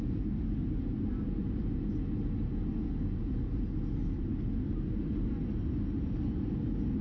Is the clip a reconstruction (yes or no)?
no